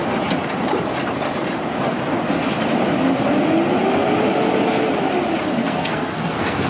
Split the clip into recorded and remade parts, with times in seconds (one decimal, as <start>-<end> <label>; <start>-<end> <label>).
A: 0.0-5.6 recorded; 5.6-6.7 remade